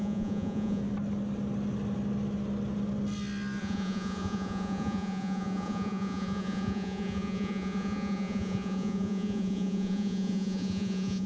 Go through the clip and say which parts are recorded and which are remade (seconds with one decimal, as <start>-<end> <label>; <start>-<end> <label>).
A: 0.0-0.8 remade; 0.8-3.6 recorded; 3.6-11.3 remade